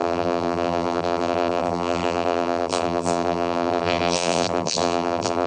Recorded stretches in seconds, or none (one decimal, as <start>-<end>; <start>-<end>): none